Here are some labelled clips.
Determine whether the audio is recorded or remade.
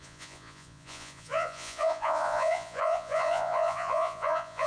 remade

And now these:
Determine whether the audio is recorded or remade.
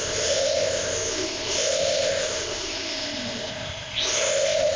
remade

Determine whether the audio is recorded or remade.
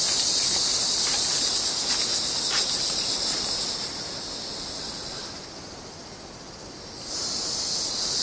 recorded